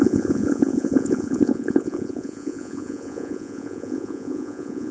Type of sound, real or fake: fake